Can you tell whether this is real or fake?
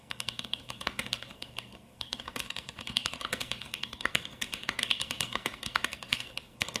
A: fake